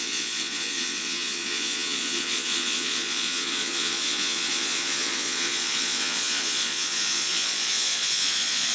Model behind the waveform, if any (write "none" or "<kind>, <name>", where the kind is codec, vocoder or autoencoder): vocoder, Vocos